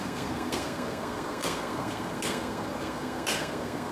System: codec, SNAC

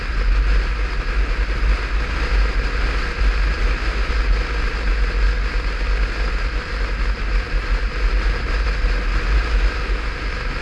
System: none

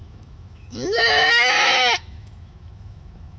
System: autoencoder, DAC-VAE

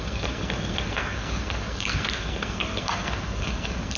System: codec, SNAC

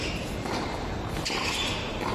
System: none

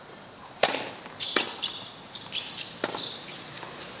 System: none